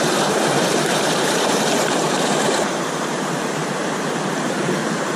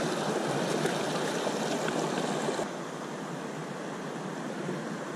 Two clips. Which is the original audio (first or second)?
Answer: second